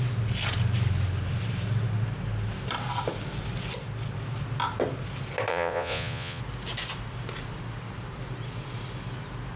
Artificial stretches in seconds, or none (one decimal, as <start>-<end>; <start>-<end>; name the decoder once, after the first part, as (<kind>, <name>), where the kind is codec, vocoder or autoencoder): 5.5-6.4 (vocoder, Vocos)